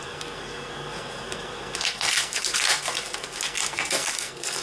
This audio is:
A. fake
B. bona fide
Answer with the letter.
A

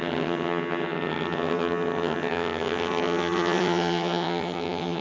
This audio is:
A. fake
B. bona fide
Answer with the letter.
A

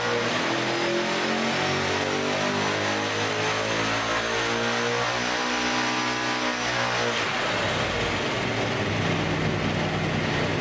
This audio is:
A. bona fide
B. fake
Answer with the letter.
A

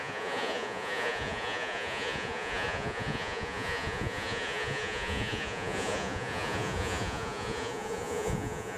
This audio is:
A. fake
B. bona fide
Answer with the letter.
A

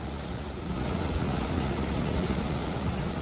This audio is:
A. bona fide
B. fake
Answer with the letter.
B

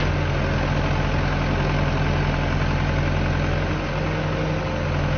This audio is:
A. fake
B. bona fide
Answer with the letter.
B